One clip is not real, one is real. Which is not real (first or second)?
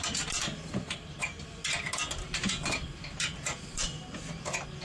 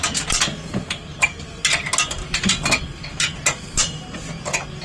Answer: first